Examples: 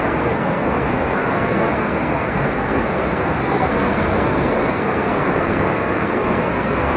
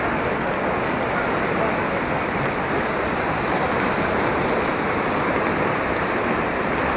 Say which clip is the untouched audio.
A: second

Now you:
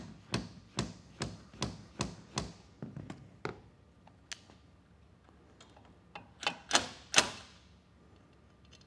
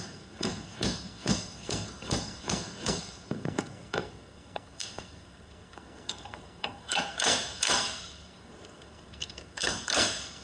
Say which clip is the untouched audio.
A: first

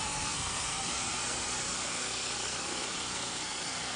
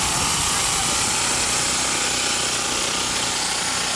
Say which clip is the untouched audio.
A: second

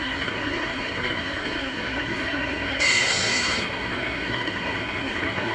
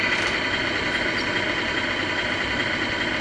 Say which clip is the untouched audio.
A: second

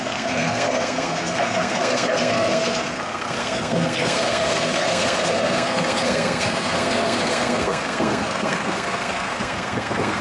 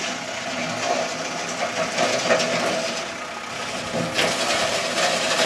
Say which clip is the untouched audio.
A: second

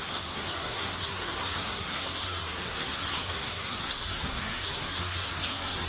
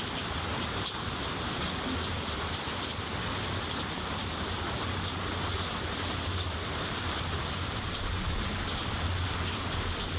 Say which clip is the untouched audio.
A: second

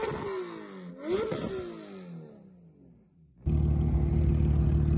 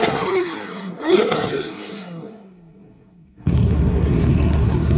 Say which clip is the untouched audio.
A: first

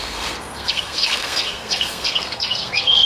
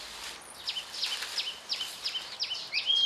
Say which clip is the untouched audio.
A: second